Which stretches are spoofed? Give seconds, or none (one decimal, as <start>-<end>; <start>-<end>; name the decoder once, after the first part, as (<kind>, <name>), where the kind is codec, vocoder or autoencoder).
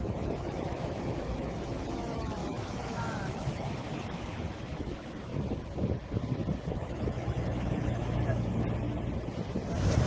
0.0-5.3 (autoencoder, DAC-VAE); 6.7-8.5